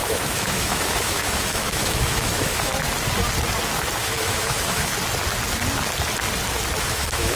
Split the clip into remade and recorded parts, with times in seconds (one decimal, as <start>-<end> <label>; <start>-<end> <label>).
0.0-2.7 remade; 2.7-4.0 recorded; 4.0-4.9 remade; 4.9-6.8 recorded; 6.8-7.4 remade